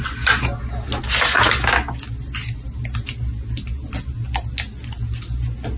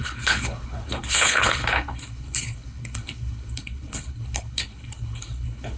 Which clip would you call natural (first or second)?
first